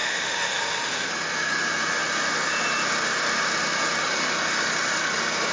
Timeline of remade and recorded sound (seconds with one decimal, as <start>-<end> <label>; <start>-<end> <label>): 0.0-1.1 remade; 1.1-5.5 recorded

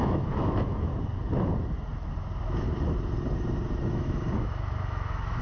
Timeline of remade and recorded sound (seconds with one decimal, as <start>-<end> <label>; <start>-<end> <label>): 0.0-0.9 remade; 0.9-3.9 recorded; 3.9-5.4 remade

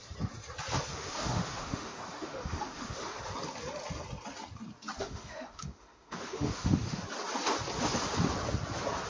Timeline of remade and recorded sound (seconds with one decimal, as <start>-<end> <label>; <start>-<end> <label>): 0.0-0.9 recorded; 0.9-3.2 remade; 3.2-5.0 recorded; 5.0-7.0 remade; 7.0-9.1 recorded

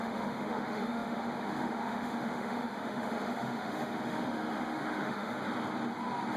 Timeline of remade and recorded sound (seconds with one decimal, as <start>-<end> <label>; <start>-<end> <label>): 0.0-5.4 remade; 5.4-6.4 recorded